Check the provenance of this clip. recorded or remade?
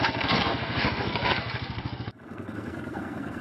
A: remade